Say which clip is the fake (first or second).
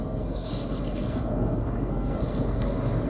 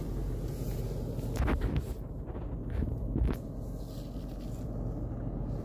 first